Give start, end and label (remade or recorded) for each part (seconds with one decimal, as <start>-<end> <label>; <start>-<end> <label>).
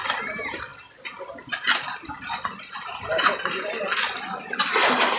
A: 0.0-5.2 recorded